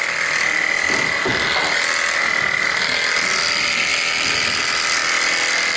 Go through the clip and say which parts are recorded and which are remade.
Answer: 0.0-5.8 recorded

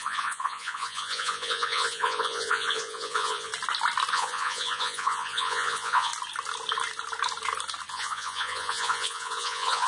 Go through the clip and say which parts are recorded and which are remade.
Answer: 0.0-3.5 remade; 3.5-4.1 recorded; 4.1-6.1 remade; 6.1-7.9 recorded; 7.9-9.9 remade

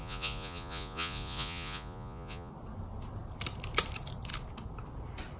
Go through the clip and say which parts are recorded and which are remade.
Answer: 0.0-2.5 remade; 2.5-5.4 recorded

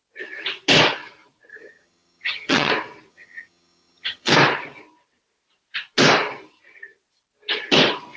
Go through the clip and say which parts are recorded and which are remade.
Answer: 0.0-1.5 recorded; 1.5-2.7 remade; 2.7-3.1 recorded; 3.1-4.3 remade; 4.3-8.2 recorded

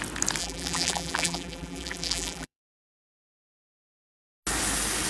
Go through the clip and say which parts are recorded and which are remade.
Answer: 0.0-0.4 recorded; 0.4-3.5 remade; 3.5-5.1 recorded

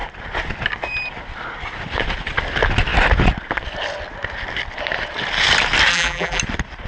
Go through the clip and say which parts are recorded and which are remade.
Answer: 0.0-5.9 recorded; 5.9-6.4 remade; 6.4-6.9 recorded